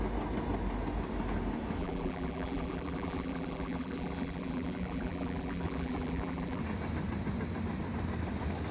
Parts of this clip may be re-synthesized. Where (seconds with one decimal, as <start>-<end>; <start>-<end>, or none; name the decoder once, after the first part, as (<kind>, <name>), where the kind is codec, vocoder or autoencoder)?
1.8-6.6 (vocoder, BigVGAN v2)